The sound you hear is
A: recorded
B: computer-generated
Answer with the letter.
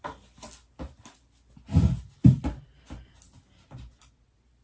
A